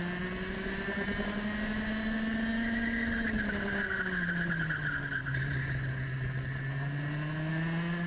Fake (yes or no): no